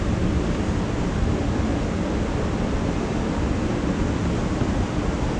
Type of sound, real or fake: real